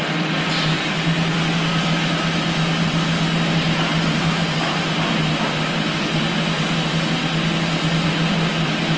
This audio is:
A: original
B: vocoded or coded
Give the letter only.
A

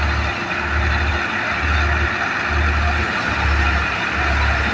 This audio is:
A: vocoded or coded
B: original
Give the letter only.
B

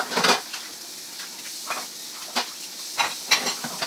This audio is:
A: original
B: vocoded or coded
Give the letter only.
A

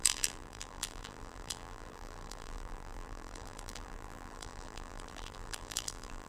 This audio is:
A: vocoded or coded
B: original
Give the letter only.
A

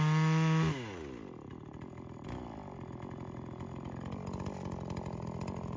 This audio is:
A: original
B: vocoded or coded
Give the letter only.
A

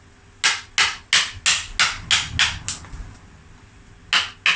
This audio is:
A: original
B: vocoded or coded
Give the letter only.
A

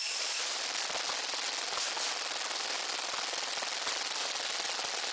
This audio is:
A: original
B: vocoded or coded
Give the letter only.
A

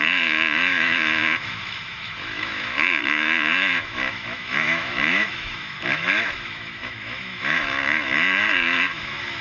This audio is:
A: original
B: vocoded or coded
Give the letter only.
B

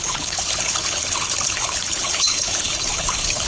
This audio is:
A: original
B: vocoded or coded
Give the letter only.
B